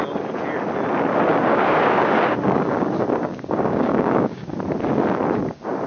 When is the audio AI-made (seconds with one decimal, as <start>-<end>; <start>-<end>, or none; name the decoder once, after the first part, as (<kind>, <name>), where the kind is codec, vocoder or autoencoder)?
1.3-4.5 (codec, DAC)